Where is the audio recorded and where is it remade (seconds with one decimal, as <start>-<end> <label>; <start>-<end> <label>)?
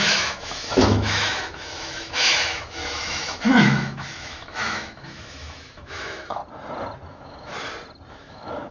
0.0-6.4 remade; 6.4-7.1 recorded; 7.1-7.5 remade; 7.5-8.1 recorded; 8.1-8.7 remade